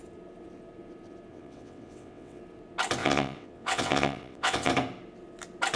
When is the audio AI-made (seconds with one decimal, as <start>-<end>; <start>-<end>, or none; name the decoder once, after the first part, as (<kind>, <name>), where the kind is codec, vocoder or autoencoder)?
1.3-2.4 (vocoder, WaveNeXt); 3.0-4.7